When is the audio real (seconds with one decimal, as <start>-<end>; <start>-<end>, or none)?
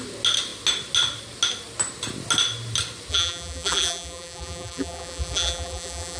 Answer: 0.0-3.1